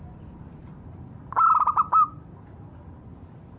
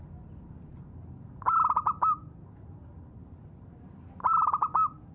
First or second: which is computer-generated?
first